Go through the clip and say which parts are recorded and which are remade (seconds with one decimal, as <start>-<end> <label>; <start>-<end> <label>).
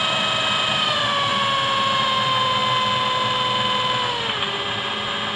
0.0-1.3 remade; 1.3-2.0 recorded; 2.0-2.6 remade; 2.6-5.4 recorded